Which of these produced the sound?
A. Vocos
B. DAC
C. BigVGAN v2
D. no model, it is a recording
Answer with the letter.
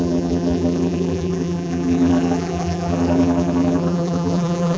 C